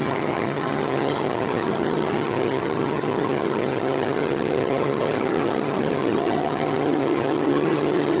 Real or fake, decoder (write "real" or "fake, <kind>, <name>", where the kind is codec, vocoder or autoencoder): fake, vocoder, HiFi-GAN